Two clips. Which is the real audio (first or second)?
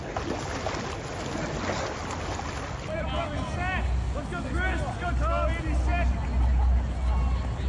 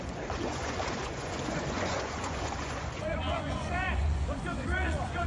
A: first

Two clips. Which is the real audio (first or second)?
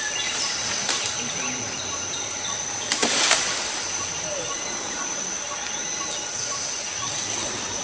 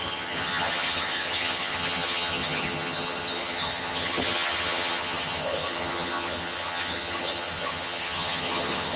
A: first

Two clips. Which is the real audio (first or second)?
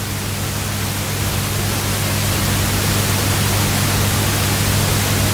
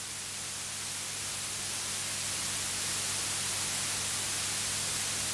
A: second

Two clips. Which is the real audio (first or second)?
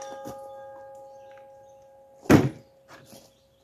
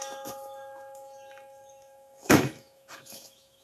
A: first